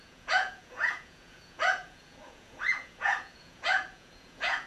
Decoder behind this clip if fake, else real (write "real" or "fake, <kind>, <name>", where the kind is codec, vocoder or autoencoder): fake, vocoder, Vocos